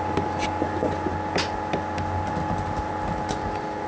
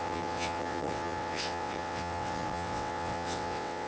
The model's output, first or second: second